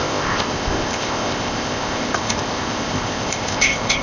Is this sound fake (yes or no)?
yes